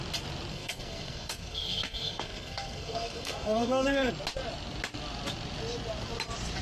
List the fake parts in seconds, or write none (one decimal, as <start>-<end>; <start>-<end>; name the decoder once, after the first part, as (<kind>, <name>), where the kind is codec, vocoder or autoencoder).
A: 0.5-4.1 (codec, SNAC)